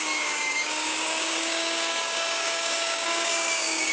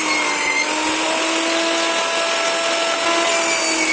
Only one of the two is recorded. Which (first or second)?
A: second